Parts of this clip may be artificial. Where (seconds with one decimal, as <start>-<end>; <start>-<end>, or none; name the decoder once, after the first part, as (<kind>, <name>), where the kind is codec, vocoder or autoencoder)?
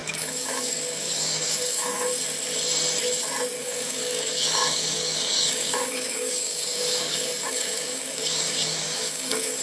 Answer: 0.0-2.1 (codec, DAC); 3.6-9.6